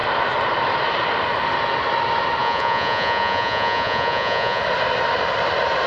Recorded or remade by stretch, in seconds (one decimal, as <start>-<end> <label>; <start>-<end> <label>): 0.0-2.4 recorded; 2.4-4.6 remade; 4.6-5.9 recorded